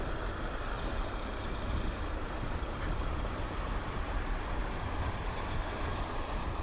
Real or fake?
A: fake